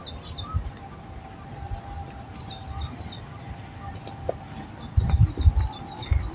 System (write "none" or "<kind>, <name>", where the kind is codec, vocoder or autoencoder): none